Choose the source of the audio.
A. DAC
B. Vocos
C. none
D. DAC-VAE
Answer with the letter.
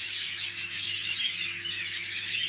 D